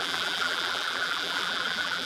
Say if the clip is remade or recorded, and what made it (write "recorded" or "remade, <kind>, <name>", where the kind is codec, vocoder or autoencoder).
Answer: remade, vocoder, BigVGAN v2